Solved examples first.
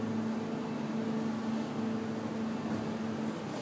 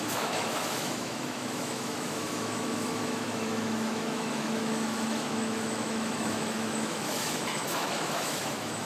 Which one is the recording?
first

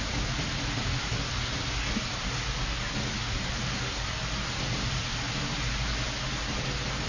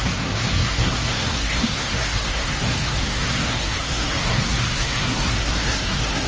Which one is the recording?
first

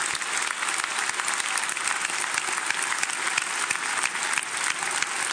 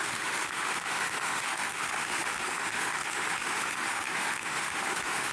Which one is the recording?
first